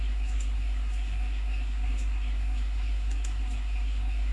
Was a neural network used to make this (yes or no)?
yes